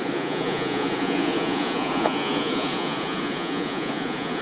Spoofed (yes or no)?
yes